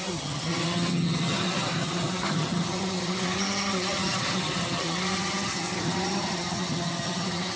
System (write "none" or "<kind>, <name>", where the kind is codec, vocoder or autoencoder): vocoder, HiFi-GAN